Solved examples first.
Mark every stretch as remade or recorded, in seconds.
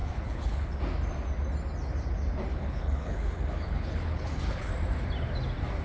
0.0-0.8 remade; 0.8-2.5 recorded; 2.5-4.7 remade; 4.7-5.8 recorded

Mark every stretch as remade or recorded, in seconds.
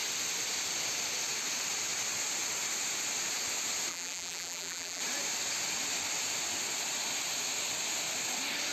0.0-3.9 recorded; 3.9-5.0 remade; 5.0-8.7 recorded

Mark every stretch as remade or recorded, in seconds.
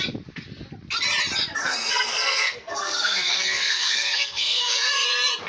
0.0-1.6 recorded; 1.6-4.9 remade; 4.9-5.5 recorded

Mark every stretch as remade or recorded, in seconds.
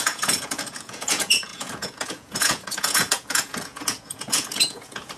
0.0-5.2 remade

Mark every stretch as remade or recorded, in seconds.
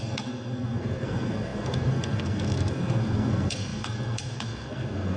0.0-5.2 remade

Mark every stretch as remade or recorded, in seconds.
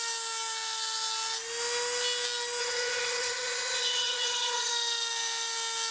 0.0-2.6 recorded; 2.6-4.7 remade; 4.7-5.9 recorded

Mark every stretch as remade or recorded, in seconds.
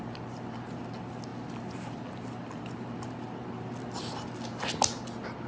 0.0-5.5 recorded